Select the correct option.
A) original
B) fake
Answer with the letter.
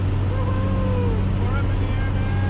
A